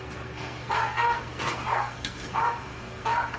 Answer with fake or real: fake